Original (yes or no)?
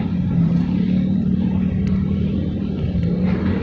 yes